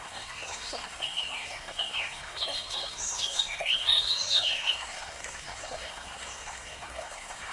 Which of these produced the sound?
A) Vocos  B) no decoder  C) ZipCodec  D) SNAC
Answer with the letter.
D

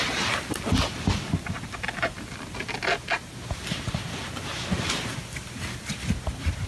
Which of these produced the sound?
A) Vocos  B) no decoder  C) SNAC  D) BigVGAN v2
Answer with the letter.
B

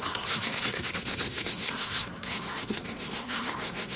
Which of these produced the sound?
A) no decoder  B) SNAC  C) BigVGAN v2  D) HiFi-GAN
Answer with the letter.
B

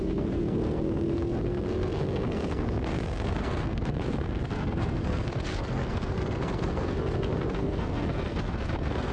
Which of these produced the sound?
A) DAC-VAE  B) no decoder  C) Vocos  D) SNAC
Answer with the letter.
D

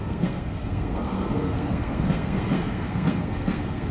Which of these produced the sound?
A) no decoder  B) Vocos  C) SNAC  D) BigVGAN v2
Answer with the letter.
C